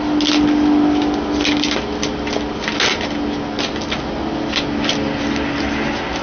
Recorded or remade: recorded